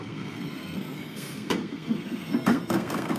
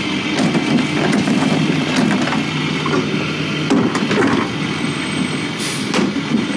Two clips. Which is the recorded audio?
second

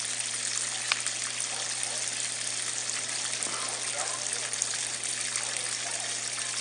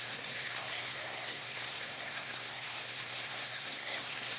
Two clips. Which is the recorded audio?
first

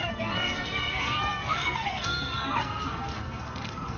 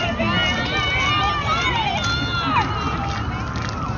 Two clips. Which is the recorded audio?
second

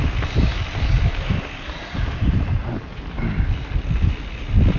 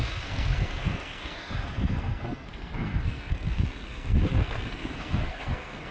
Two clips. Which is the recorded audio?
first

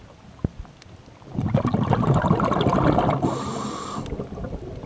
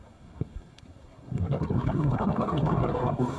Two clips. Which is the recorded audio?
first